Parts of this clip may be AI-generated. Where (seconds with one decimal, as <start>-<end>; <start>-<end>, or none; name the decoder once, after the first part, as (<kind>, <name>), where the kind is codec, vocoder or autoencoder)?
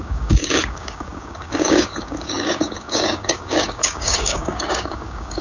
0.0-5.4 (codec, DAC)